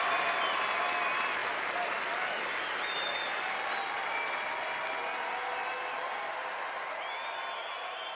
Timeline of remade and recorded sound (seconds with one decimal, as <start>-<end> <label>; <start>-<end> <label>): 0.0-8.1 recorded